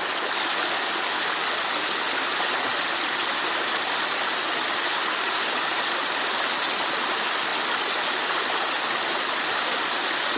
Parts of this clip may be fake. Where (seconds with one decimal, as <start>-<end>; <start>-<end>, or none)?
none